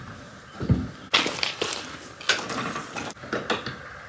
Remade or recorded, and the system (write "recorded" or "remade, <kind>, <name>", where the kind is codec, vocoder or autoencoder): recorded